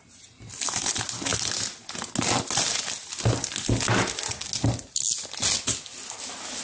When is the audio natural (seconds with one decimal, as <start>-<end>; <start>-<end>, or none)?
0.0-6.6